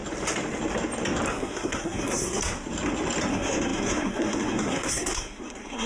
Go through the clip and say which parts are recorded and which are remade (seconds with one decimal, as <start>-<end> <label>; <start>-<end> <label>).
0.0-1.3 recorded; 1.3-2.4 remade; 2.4-3.3 recorded; 3.3-5.9 remade